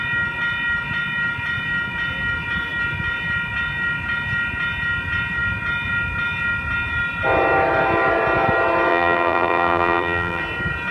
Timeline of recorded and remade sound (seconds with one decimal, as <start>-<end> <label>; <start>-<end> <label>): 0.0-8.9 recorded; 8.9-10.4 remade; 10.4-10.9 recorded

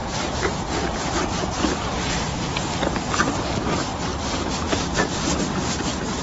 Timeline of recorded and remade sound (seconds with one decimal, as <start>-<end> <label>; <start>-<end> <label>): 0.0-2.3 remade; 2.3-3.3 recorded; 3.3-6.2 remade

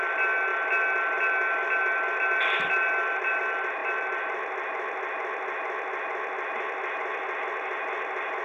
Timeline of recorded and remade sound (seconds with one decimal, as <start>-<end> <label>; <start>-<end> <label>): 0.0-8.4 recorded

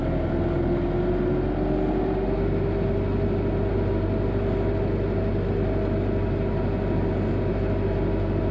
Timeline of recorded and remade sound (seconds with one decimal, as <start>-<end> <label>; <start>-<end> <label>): 0.0-8.5 recorded

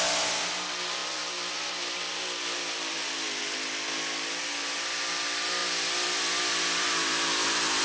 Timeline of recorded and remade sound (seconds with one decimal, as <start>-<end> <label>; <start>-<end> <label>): 0.0-1.0 recorded; 1.0-3.4 remade; 3.4-5.6 recorded; 5.6-7.8 remade

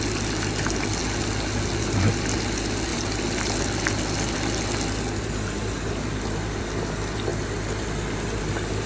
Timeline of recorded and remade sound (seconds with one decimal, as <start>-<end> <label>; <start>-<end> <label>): 0.0-8.9 recorded